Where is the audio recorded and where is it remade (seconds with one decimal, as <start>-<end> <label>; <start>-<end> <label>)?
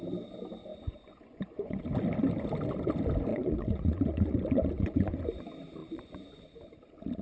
0.0-0.7 recorded; 0.7-1.8 remade; 1.8-3.3 recorded; 3.3-5.2 remade; 5.2-5.8 recorded; 5.8-6.4 remade; 6.4-7.2 recorded